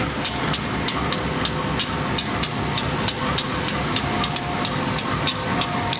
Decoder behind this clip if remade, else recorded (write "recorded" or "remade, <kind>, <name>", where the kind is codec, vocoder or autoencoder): recorded